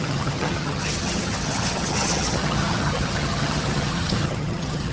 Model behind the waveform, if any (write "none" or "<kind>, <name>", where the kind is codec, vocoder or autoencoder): vocoder, HiFi-GAN